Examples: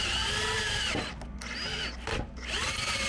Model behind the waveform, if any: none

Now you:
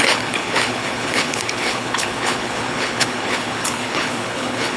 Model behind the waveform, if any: codec, HILCodec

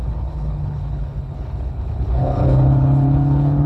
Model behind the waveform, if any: codec, HILCodec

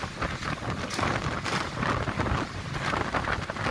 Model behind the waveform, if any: none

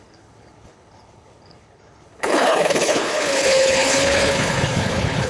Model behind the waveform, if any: codec, HILCodec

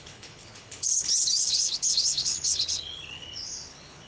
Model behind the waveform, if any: codec, HILCodec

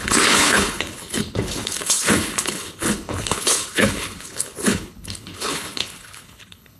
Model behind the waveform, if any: codec, HILCodec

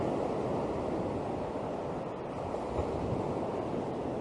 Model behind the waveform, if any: none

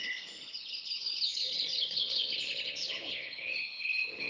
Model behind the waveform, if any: codec, HILCodec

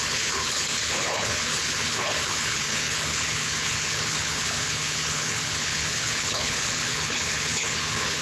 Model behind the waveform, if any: codec, HILCodec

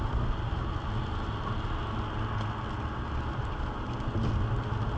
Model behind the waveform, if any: none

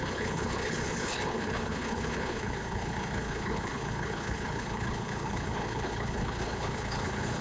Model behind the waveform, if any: codec, HILCodec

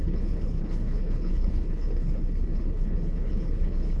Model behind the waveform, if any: codec, HILCodec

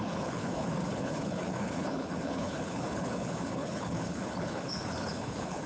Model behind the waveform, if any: codec, HILCodec